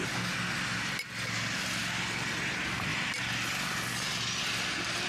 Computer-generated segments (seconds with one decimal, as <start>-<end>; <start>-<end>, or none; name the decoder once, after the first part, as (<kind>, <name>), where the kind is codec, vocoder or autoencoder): none